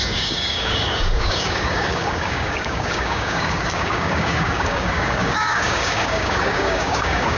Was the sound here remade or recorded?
remade